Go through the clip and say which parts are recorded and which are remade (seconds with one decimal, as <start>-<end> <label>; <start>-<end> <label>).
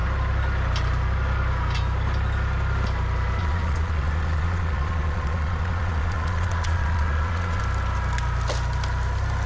0.0-3.4 recorded; 3.4-7.6 remade; 7.6-9.5 recorded